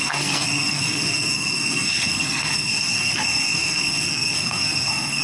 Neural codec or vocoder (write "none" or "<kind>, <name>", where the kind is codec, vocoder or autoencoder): codec, SNAC